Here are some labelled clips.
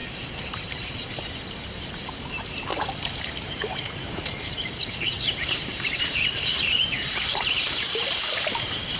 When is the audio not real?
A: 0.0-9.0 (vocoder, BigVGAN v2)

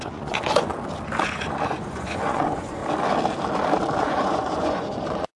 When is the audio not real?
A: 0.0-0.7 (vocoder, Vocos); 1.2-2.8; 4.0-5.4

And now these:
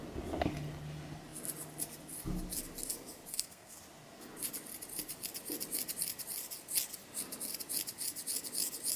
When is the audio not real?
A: 3.3-3.8 (codec, SNAC)

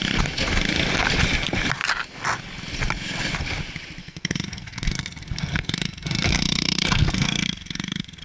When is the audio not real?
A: 4.0-8.2 (codec, SNAC)

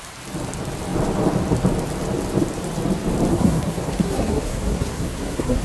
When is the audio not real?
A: 3.3-5.6 (codec, SNAC)